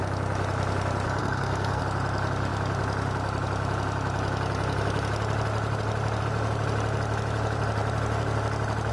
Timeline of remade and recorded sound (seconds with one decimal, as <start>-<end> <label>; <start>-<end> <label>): 0.0-1.2 recorded; 1.2-1.8 remade; 1.8-8.9 recorded